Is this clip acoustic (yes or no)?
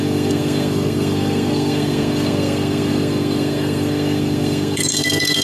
no